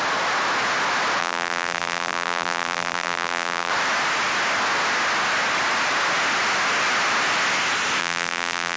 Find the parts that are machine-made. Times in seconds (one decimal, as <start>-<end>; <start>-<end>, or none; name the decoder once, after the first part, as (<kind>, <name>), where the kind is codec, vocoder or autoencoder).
1.2-3.7 (vocoder, BigVGAN v2); 8.0-8.8